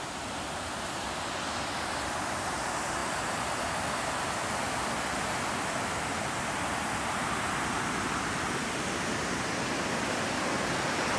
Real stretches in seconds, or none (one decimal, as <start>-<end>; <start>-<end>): 0.0-11.2